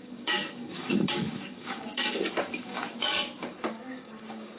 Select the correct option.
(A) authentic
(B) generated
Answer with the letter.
B